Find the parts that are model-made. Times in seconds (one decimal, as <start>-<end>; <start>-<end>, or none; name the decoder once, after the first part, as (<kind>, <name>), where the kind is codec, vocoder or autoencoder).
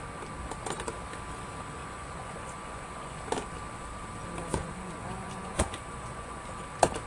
1.8-3.2 (vocoder, Vocos); 4.5-6.5